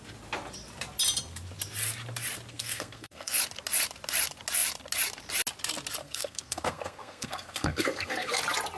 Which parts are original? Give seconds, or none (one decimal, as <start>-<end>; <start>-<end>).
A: 0.0-2.5; 3.4-6.0; 8.4-8.8